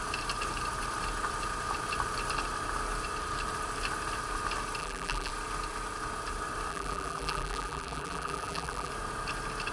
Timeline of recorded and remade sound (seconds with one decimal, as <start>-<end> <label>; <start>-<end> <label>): 0.0-4.8 recorded; 4.8-5.3 remade; 5.3-6.7 recorded; 6.7-8.9 remade; 8.9-9.7 recorded